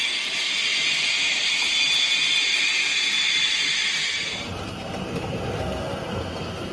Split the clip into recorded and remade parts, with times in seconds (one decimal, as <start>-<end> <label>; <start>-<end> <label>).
0.0-0.7 recorded; 0.7-1.5 remade; 1.5-3.8 recorded; 3.8-5.6 remade; 5.6-6.7 recorded